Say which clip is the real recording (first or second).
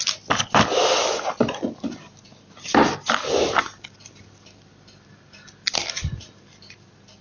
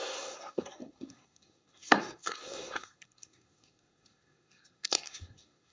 first